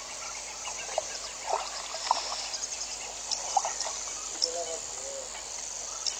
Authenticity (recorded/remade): recorded